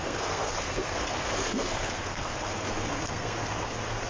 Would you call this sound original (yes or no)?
no